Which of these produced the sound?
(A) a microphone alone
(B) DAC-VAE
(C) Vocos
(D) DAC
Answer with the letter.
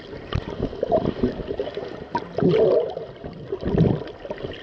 A